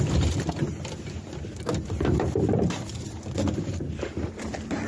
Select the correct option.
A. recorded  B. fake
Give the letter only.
A